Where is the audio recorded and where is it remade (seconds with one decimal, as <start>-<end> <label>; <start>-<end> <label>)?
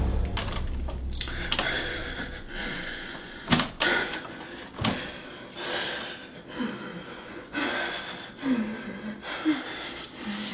0.0-2.0 recorded; 2.0-4.4 remade; 4.4-6.9 recorded; 6.9-8.0 remade; 8.0-10.5 recorded